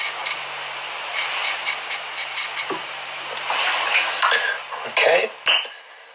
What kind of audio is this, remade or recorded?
recorded